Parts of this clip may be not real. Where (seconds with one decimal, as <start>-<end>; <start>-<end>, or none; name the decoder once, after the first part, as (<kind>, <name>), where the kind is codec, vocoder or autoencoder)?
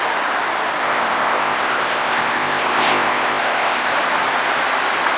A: 0.8-3.9 (codec, ZipCodec)